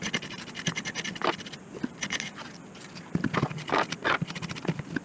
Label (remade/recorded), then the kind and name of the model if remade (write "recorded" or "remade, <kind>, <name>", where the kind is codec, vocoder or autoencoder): recorded